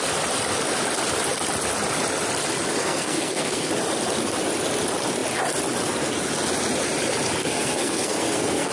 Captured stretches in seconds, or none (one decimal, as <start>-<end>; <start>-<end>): 0.0-2.8; 3.7-7.4